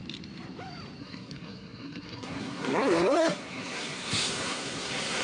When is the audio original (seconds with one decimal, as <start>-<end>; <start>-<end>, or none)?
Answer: 0.0-1.0